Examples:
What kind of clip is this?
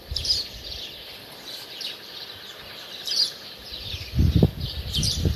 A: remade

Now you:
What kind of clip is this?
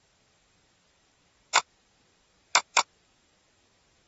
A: remade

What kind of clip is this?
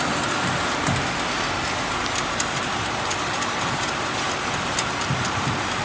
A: recorded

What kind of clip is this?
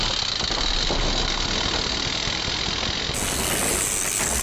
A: recorded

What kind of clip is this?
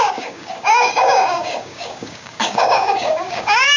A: remade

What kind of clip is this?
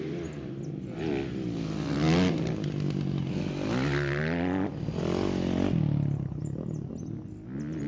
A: recorded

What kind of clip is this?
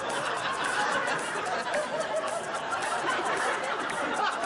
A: recorded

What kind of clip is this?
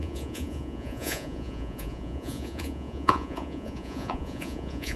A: remade